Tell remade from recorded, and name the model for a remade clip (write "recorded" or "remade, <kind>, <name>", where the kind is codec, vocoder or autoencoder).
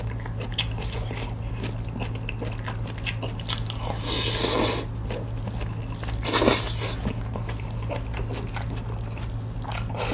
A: recorded